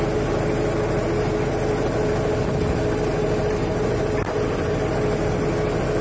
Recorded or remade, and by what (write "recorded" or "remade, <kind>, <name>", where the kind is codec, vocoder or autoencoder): recorded